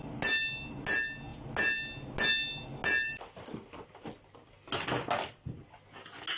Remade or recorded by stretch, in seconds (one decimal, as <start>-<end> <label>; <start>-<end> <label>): 0.0-6.4 recorded